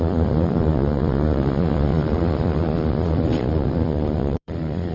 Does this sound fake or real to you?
fake